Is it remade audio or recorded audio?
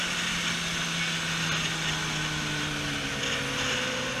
recorded